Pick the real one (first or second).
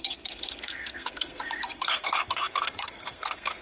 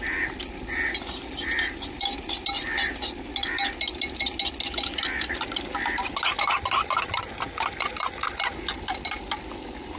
second